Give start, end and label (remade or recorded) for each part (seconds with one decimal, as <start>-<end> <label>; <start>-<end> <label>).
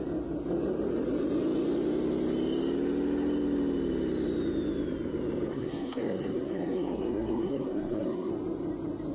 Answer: 0.0-5.5 recorded; 5.5-8.3 remade; 8.3-9.1 recorded